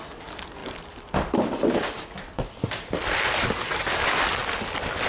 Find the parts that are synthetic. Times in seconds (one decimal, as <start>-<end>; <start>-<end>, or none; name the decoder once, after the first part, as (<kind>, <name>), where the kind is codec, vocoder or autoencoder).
none

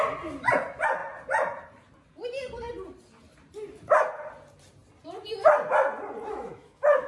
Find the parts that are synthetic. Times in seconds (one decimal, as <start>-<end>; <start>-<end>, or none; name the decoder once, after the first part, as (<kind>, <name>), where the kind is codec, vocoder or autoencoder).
6.3-7.1 (autoencoder, DAC-VAE)

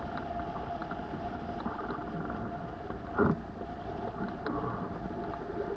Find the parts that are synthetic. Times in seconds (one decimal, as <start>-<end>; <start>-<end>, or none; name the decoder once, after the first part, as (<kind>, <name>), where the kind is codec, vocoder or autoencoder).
none

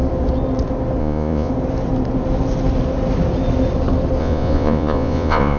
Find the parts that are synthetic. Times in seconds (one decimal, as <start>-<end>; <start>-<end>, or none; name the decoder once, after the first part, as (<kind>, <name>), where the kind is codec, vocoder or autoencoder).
1.0-1.5 (vocoder, Vocos); 4.2-5.6

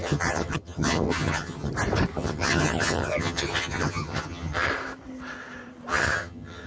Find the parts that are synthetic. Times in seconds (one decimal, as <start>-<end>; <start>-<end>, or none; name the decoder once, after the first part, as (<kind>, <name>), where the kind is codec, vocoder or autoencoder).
0.0-1.7 (vocoder, HiFi-GAN); 2.1-4.7; 5.9-6.7

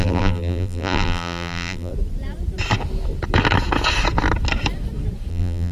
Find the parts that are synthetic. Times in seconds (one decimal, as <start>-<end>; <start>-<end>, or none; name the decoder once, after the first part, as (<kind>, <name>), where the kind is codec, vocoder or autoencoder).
0.0-1.9 (vocoder, BigVGAN v2); 5.3-5.7

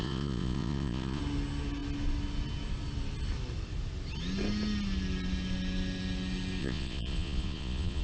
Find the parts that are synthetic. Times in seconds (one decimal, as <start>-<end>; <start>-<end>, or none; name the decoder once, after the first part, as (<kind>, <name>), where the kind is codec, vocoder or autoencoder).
0.0-1.2 (vocoder, Vocos); 6.6-8.0